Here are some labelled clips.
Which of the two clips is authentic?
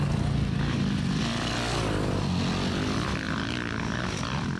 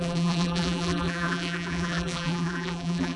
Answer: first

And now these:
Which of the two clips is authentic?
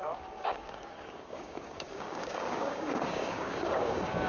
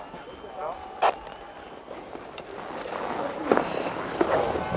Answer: second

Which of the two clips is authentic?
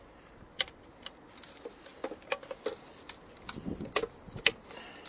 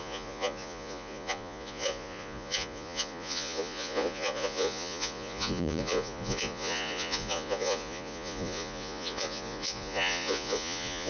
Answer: first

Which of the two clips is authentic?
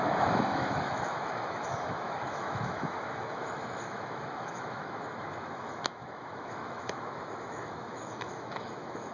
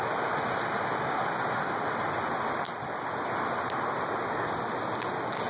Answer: second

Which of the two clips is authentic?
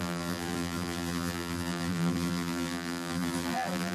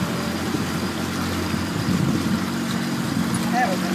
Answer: second